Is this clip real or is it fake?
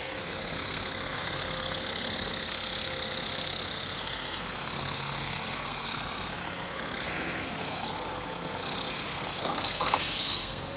fake